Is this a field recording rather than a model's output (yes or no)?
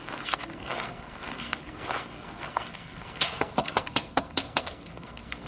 no